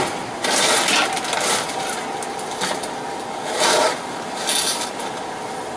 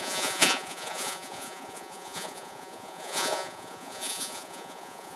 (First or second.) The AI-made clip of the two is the second